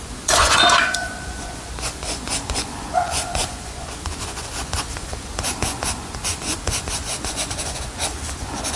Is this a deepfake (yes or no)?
yes